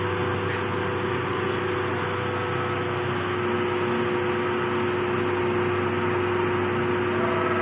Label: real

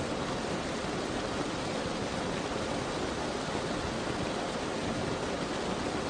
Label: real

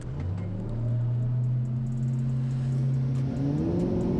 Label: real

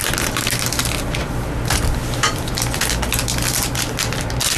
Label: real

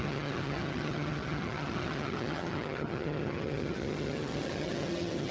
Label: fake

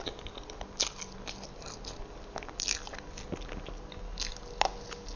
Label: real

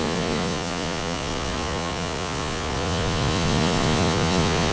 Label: fake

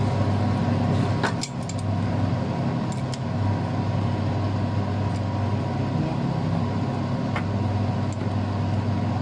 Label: real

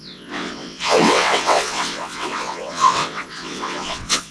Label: fake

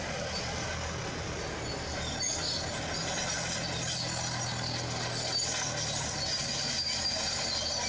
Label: real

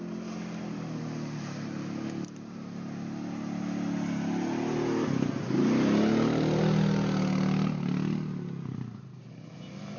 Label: real